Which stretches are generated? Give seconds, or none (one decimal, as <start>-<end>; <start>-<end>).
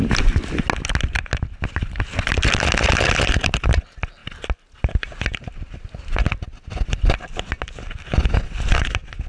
none